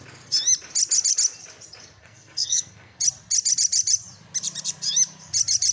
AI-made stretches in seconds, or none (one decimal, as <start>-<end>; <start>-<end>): 2.0-3.0

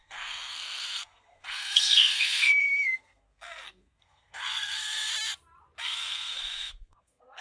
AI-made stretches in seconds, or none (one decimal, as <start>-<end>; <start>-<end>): 0.0-5.1; 5.8-7.4

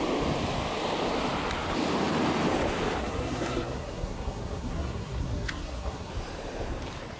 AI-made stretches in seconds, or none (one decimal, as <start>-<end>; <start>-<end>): 3.0-6.1

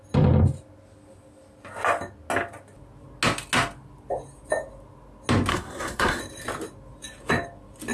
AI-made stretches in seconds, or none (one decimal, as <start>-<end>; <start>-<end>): 5.5-6.2

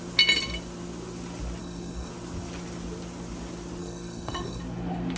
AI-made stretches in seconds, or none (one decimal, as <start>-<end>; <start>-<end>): 1.6-2.1; 3.8-4.6

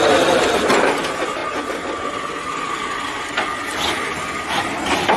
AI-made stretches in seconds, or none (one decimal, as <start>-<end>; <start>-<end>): none